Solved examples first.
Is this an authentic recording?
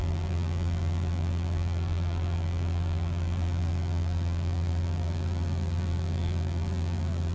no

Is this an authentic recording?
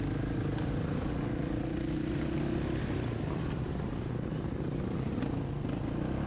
yes